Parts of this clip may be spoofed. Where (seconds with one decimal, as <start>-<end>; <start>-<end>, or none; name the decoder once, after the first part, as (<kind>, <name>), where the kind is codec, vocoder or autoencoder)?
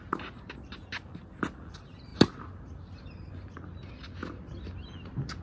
none